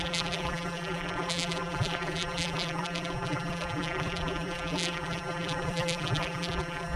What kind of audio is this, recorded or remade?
remade